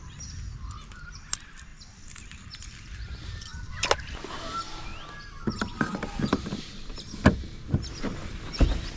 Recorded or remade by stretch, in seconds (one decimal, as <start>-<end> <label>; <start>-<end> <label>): 0.0-6.1 recorded; 6.1-6.9 remade; 6.9-9.0 recorded